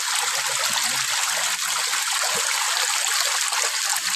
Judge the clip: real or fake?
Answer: real